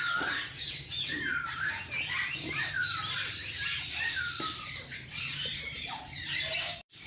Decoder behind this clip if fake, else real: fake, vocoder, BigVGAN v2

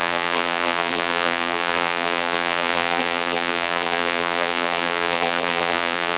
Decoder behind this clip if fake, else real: fake, vocoder, BigVGAN v2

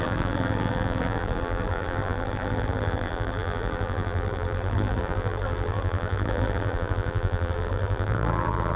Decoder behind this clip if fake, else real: fake, vocoder, BigVGAN v2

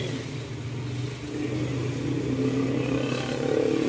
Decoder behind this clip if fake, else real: real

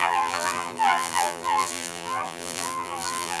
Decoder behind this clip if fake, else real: fake, vocoder, BigVGAN v2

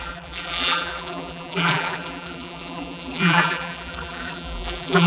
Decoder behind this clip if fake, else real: fake, vocoder, BigVGAN v2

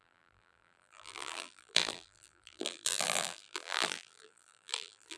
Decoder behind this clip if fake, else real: fake, vocoder, BigVGAN v2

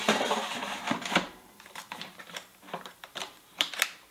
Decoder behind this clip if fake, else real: fake, vocoder, BigVGAN v2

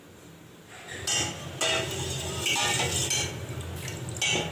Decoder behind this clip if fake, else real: real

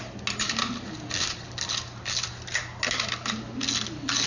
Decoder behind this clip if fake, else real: real